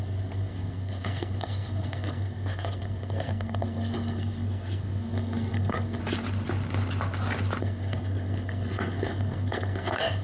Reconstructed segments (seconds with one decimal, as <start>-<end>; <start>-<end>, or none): 0.0-6.0; 7.6-10.2